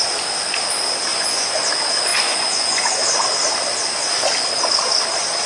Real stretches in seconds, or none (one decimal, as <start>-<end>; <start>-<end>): 0.0-1.1; 1.7-2.1; 3.0-5.5